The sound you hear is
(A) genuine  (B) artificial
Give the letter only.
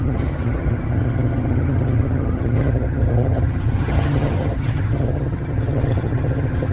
B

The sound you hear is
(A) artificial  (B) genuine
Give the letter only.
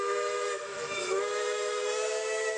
A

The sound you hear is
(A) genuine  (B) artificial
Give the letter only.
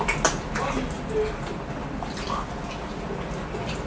A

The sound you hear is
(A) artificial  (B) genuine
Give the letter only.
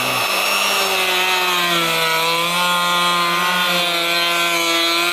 B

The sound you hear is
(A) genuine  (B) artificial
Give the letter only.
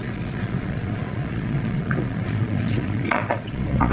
B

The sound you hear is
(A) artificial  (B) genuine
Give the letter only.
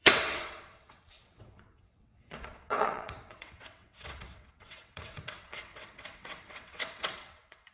A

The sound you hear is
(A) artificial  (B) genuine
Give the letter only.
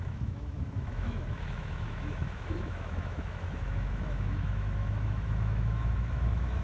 A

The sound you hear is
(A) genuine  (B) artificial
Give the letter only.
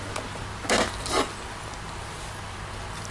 A